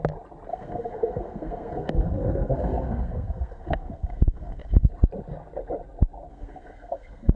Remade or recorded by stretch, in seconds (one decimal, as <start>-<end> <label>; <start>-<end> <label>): 0.0-0.5 recorded; 0.5-4.9 remade; 4.9-6.3 recorded; 6.3-7.4 remade